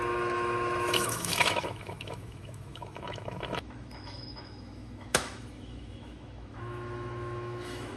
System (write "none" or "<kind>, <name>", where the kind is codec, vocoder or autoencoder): autoencoder, DAC-VAE